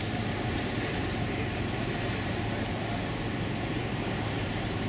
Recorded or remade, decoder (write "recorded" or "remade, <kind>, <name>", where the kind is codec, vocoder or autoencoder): remade, vocoder, BigVGAN v2